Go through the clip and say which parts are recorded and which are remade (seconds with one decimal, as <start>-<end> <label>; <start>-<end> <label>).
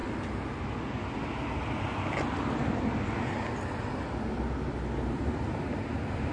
0.0-6.3 recorded